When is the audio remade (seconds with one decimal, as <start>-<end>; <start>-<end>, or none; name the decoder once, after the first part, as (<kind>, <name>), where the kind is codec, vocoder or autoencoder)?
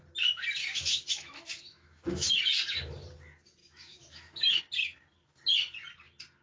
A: 0.6-2.4 (autoencoder, DAC-VAE); 3.6-4.6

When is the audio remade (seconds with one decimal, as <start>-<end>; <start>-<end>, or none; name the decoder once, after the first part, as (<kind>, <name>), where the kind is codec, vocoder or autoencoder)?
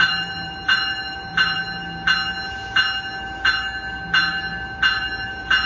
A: 0.0-1.6 (vocoder, BigVGAN v2); 5.0-5.7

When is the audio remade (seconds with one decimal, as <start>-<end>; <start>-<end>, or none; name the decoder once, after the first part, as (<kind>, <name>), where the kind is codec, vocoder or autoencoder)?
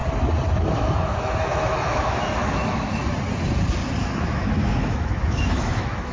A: 0.6-3.0 (autoencoder, DAC-VAE); 4.0-6.1